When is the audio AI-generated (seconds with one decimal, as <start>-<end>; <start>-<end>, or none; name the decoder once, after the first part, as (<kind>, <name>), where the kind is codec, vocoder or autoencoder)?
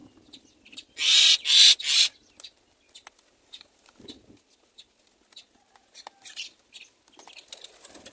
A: none